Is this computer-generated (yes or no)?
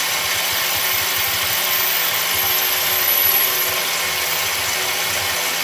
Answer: no